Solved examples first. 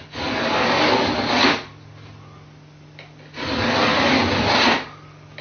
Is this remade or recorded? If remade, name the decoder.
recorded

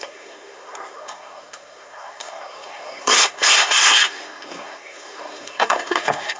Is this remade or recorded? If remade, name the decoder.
remade, codec, SNAC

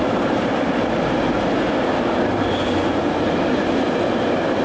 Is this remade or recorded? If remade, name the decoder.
recorded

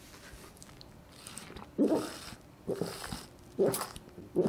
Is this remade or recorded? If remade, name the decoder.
recorded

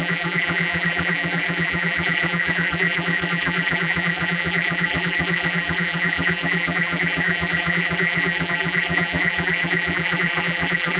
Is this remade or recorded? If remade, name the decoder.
remade, vocoder, BigVGAN v2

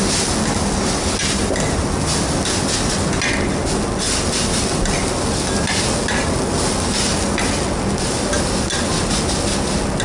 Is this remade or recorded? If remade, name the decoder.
recorded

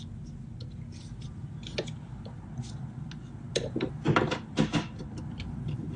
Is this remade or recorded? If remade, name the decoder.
recorded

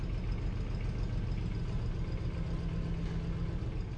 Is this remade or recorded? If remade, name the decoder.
recorded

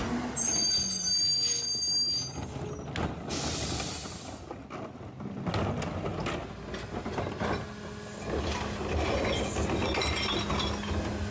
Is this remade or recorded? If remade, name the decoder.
recorded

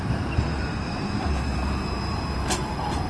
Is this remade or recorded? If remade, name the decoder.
remade, vocoder, BigVGAN v2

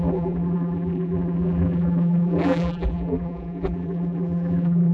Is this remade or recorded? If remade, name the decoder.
remade, vocoder, BigVGAN v2